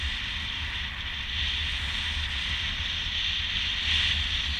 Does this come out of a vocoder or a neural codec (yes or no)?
no